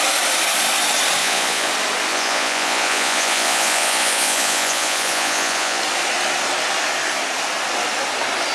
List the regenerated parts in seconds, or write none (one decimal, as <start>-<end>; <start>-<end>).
1.2-1.7; 2.1-5.8